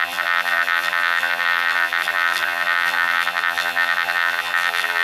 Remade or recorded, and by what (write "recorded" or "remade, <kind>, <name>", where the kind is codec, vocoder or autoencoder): remade, vocoder, BigVGAN v2